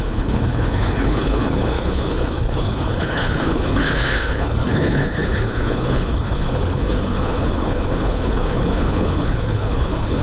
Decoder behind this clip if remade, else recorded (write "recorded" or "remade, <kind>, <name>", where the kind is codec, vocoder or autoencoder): remade, codec, HILCodec